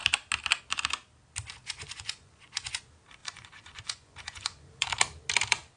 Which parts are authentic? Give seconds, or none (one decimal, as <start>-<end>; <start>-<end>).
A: 0.0-1.6; 2.8-3.2; 4.9-5.8